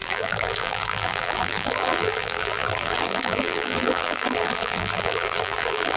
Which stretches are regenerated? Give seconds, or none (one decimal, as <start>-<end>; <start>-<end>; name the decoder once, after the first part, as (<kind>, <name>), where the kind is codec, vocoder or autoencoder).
0.0-6.0 (vocoder, BigVGAN v2)